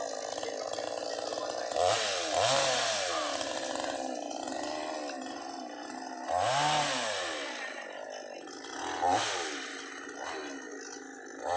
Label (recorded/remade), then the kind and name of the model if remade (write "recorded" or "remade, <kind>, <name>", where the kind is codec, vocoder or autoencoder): recorded